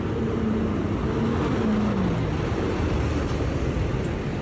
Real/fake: real